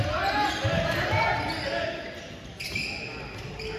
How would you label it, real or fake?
real